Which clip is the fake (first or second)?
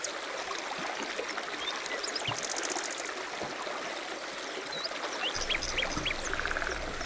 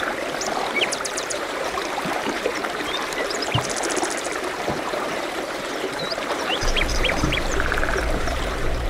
second